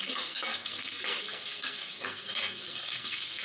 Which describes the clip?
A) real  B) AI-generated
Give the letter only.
B